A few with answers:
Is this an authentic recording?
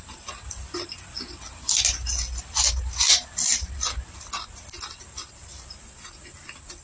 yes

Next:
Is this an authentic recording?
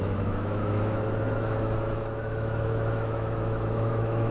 no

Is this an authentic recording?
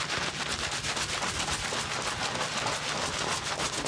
yes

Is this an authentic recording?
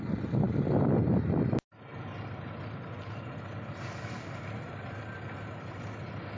yes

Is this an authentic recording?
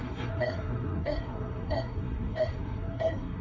no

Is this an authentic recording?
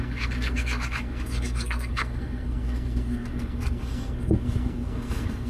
no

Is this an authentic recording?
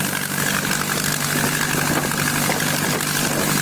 yes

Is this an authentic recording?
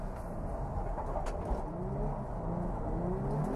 yes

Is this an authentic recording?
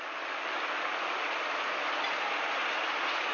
no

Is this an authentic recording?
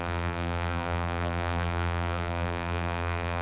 no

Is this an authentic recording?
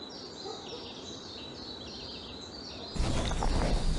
yes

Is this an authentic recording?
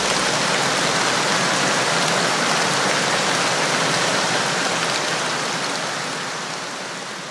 yes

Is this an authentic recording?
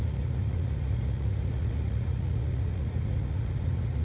no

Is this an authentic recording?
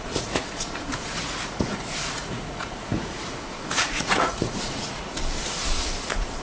no